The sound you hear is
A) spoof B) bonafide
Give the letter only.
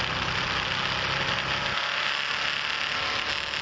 B